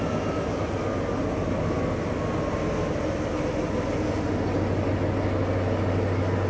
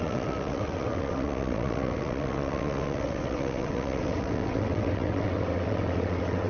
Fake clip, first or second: second